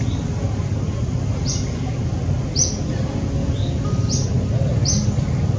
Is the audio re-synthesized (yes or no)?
no